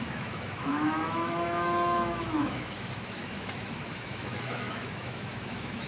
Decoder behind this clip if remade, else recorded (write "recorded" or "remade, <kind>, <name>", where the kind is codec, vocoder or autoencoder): remade, autoencoder, DAC-VAE